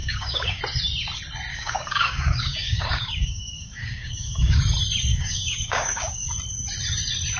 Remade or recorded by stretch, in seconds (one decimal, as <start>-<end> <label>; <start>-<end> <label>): 0.0-0.6 remade; 0.6-1.5 recorded; 1.5-4.6 remade; 4.6-5.1 recorded; 5.1-6.3 remade; 6.3-7.4 recorded